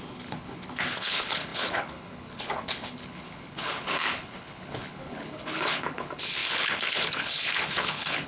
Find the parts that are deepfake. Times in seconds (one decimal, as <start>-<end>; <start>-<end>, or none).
0.0-8.3